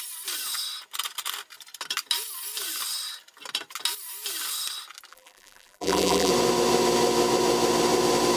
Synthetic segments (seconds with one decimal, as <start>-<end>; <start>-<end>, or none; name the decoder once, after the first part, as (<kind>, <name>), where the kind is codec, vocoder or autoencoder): 5.1-6.3 (vocoder, BigVGAN v2)